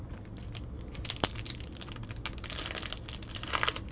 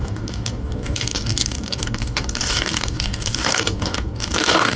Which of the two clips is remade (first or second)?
second